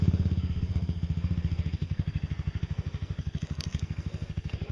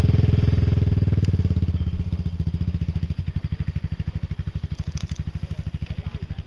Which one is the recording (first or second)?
second